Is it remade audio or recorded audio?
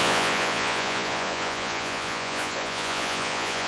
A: remade